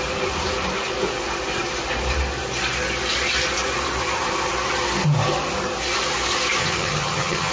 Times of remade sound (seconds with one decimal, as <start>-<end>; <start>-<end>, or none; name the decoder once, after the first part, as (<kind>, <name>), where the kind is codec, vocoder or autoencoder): 6.6-7.5 (vocoder, HiFi-GAN)